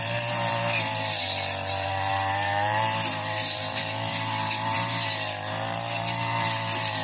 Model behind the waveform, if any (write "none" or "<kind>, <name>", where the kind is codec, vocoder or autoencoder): vocoder, BigVGAN v2